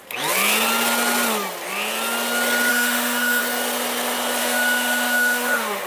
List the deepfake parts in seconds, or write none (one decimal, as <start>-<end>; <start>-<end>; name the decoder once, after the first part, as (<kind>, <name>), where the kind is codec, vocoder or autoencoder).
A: 2.7-3.4 (autoencoder, DAC-VAE); 4.4-5.9